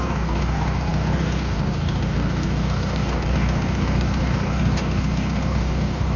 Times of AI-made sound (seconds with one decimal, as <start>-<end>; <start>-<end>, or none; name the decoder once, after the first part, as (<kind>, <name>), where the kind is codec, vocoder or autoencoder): 0.0-6.2 (codec, DAC)